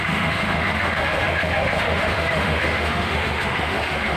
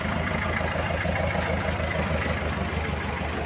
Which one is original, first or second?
second